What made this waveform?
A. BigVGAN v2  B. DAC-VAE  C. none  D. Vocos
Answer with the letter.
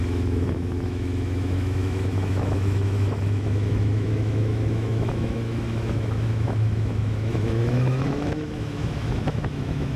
B